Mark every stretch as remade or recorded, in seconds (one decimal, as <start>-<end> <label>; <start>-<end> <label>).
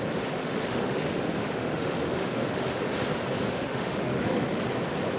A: 0.0-0.4 recorded; 0.4-2.8 remade; 2.8-3.6 recorded; 3.6-4.6 remade; 4.6-5.2 recorded